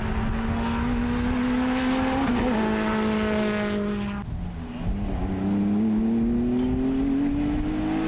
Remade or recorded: recorded